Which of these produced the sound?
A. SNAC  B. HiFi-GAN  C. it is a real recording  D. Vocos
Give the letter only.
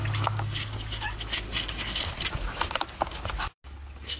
C